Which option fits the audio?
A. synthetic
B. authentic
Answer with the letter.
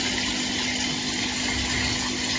B